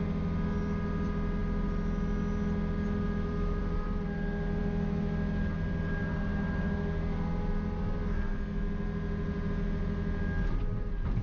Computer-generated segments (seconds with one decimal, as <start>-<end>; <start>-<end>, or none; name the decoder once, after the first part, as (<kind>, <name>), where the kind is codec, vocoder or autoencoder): none